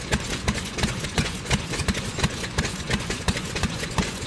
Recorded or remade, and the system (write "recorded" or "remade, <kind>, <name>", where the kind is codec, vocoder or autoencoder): remade, vocoder, Vocos